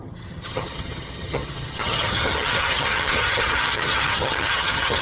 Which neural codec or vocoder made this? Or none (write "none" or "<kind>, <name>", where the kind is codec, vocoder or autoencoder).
vocoder, HiFi-GAN